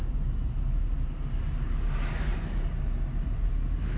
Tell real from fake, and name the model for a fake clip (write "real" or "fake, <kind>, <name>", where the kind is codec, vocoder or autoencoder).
real